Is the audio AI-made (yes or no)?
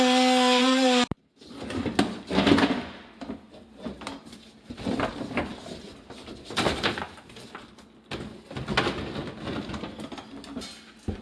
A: no